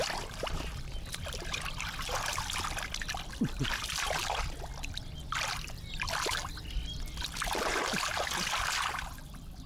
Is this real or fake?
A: real